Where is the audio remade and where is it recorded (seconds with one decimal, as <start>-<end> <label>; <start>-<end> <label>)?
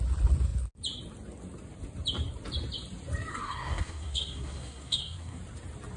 0.0-3.3 recorded; 3.3-5.4 remade; 5.4-6.0 recorded